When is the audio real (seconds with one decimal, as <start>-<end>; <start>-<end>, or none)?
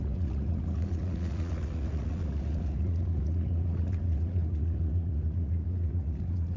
none